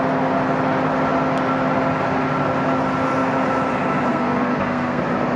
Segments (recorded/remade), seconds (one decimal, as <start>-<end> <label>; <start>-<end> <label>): 0.0-4.1 recorded; 4.1-5.0 remade; 5.0-5.4 recorded